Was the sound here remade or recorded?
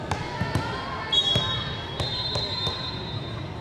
recorded